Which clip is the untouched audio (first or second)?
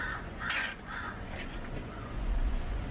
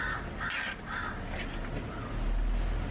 second